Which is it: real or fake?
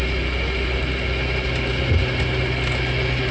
real